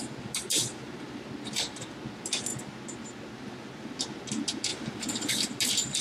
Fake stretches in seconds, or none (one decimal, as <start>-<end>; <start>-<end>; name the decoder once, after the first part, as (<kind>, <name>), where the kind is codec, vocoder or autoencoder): 4.7-5.3 (vocoder, BigVGAN v2)